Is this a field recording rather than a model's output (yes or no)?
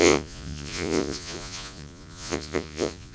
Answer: no